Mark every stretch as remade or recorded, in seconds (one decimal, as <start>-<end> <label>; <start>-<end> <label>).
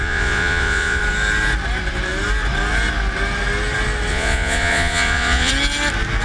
0.0-1.0 remade; 1.0-4.1 recorded; 4.1-5.5 remade; 5.5-6.2 recorded